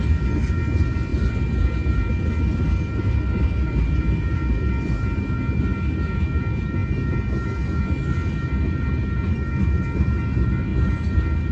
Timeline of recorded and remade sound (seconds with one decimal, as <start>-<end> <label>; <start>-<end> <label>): 0.0-11.5 recorded